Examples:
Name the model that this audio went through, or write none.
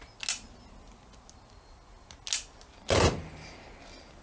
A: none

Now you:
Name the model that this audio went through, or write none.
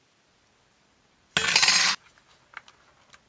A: none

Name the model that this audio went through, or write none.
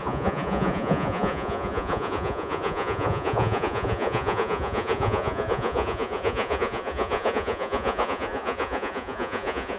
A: vocoder, Vocos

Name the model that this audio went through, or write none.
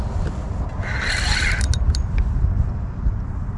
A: none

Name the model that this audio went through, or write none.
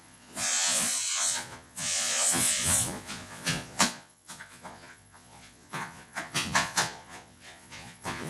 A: vocoder, Vocos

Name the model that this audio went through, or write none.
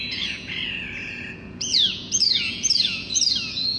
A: vocoder, Vocos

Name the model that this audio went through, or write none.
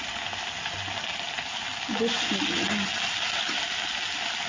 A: none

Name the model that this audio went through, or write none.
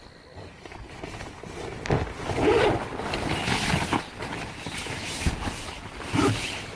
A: none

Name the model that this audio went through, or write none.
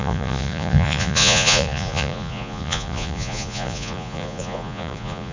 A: vocoder, Vocos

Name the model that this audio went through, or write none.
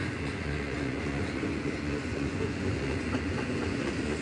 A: vocoder, Vocos